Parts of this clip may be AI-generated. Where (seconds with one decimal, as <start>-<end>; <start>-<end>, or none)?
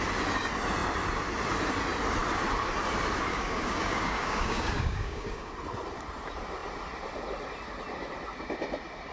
3.3-5.5